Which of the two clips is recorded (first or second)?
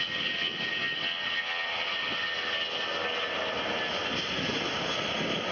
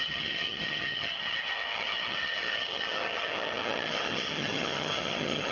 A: first